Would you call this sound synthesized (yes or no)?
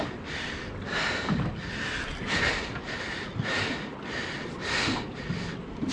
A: no